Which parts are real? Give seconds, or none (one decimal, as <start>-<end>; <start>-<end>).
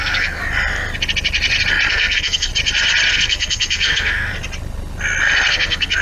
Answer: 0.4-1.9; 2.5-3.1; 4.3-5.5